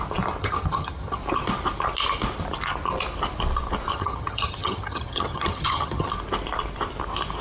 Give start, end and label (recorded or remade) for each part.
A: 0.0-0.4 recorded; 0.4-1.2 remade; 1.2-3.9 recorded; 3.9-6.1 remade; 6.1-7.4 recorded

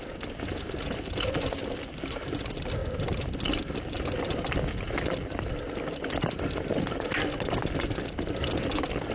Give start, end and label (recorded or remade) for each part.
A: 0.0-9.1 recorded